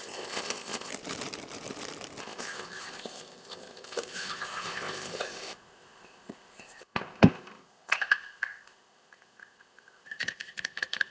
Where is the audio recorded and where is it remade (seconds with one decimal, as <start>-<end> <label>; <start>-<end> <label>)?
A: 0.0-0.9 remade; 0.9-2.2 recorded; 2.2-11.1 remade